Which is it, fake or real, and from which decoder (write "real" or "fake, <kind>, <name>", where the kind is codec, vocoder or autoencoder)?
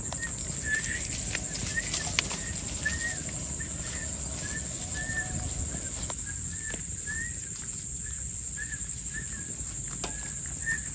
real